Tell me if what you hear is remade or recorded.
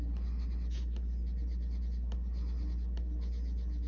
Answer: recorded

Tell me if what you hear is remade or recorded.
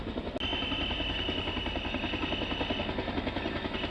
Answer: recorded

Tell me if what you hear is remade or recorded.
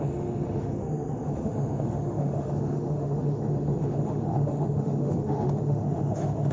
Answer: remade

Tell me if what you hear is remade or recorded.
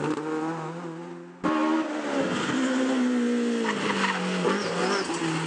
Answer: recorded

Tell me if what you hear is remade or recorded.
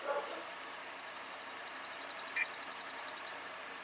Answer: remade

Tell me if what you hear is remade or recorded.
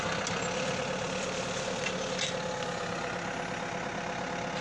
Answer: recorded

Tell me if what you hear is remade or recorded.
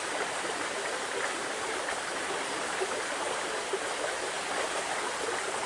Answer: recorded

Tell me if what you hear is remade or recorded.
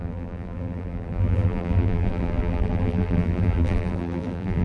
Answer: remade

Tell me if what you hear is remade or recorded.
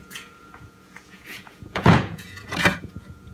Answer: remade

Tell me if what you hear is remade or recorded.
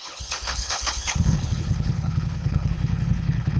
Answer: remade